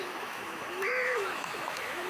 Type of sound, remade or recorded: remade